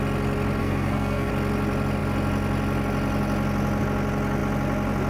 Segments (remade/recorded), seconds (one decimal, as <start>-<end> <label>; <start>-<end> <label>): 0.0-0.6 recorded; 0.6-1.3 remade; 1.3-5.1 recorded